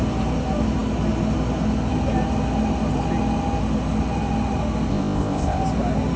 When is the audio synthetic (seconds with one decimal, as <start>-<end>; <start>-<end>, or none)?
4.9-5.6